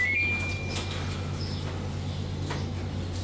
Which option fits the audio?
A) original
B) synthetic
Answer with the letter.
A